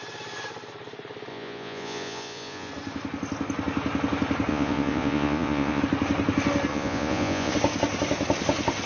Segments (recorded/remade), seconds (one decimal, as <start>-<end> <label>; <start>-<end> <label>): 0.0-1.3 recorded; 1.3-2.7 remade; 2.7-4.5 recorded; 4.5-5.8 remade; 5.8-6.7 recorded; 6.7-7.5 remade; 7.5-8.9 recorded